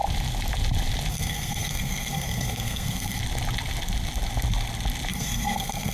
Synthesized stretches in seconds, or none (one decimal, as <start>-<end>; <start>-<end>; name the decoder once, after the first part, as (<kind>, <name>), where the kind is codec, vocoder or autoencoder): 1.1-3.2 (codec, SNAC); 5.1-5.9